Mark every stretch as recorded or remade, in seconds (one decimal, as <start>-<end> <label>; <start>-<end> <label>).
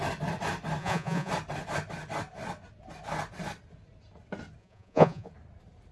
0.0-0.8 recorded; 0.8-1.3 remade; 1.3-4.6 recorded; 4.6-5.3 remade; 5.3-5.9 recorded